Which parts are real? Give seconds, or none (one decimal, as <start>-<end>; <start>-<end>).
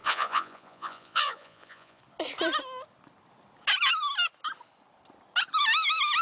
2.0-6.2